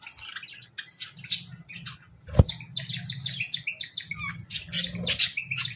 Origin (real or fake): real